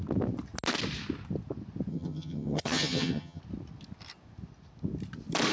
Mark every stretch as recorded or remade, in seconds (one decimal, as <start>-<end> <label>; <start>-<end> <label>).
0.0-1.9 recorded; 1.9-3.4 remade; 3.4-5.5 recorded